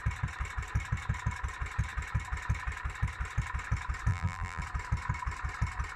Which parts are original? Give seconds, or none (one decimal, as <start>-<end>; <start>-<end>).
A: 0.0-4.1; 4.6-6.0